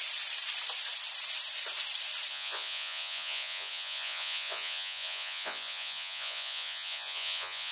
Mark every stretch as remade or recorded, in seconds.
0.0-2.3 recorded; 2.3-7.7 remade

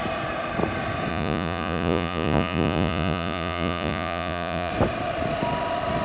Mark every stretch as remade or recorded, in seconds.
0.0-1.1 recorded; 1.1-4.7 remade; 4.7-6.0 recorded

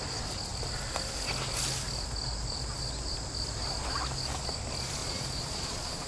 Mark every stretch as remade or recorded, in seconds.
0.0-5.0 recorded; 5.0-6.1 remade